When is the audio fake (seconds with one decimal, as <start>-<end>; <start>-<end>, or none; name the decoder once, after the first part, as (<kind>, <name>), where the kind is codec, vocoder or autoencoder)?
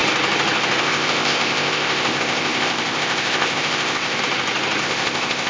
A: 0.8-4.2 (codec, ZipCodec); 4.8-5.5